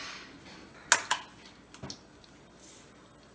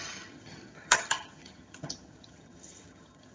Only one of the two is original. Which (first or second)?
first